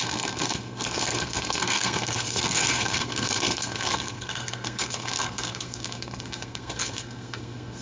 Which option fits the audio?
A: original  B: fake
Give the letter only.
B